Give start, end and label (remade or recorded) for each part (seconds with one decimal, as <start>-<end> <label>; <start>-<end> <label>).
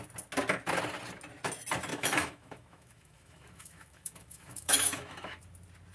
0.0-1.9 recorded; 1.9-5.4 remade; 5.4-5.9 recorded